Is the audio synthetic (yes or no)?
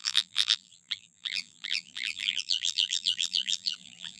yes